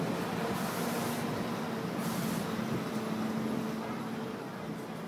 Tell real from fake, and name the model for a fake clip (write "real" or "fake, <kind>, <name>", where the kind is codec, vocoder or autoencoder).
real